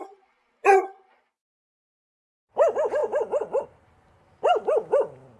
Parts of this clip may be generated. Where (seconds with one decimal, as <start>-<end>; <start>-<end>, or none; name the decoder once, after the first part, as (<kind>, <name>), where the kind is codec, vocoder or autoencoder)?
none

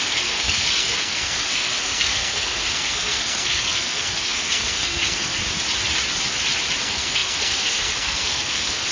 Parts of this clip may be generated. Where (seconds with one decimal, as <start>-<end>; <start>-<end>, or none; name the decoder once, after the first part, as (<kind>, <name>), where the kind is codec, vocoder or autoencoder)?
0.0-5.4 (codec, SNAC); 6.8-8.9

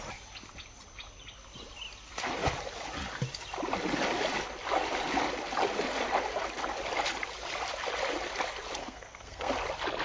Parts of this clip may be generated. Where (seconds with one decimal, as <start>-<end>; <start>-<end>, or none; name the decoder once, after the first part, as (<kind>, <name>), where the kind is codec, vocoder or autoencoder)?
8.8-9.5 (codec, SNAC)

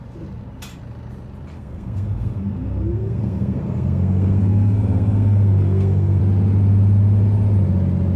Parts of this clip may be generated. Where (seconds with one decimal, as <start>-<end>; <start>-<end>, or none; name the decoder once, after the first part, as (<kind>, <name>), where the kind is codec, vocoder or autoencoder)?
1.5-6.2 (codec, SNAC)

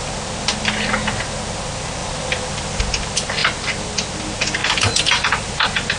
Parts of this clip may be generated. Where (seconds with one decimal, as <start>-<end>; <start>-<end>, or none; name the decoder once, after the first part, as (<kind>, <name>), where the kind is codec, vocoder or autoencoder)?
none

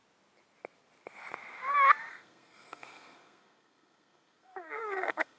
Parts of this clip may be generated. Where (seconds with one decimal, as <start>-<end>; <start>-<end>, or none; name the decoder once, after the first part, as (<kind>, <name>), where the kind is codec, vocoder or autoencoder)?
2.1-5.4 (codec, SNAC)

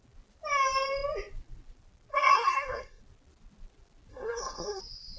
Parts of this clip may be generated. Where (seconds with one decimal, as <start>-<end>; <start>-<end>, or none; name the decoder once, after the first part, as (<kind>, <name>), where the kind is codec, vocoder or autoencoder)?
2.1-3.0 (codec, SNAC); 4.1-4.8

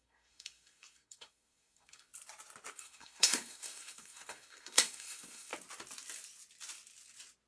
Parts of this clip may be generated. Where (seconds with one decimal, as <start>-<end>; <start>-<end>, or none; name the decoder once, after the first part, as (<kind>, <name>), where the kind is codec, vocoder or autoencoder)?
0.0-2.1 (codec, SNAC); 2.7-5.5